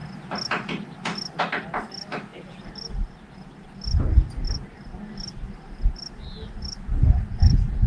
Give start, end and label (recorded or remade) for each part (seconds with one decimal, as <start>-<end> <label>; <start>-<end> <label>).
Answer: 0.0-2.3 recorded; 2.3-2.9 remade; 2.9-7.9 recorded